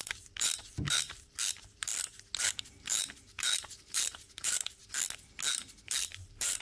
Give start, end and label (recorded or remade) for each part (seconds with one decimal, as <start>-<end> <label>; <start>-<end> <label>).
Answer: 0.0-1.9 remade; 1.9-2.4 recorded; 2.4-4.8 remade; 4.8-5.8 recorded; 5.8-6.6 remade